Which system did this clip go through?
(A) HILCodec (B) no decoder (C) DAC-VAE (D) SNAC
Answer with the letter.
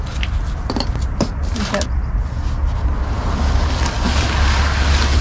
B